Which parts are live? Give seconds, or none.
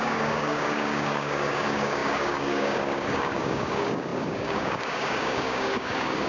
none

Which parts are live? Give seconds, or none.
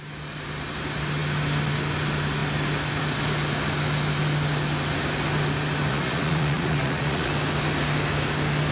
0.0-5.9; 7.3-8.7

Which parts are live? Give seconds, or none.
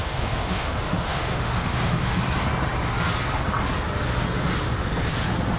2.2-5.6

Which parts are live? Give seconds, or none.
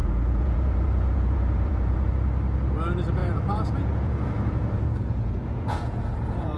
2.1-3.2